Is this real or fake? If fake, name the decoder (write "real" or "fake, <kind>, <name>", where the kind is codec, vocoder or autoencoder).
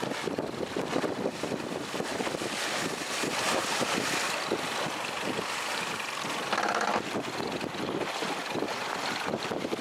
real